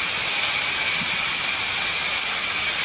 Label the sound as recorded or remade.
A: recorded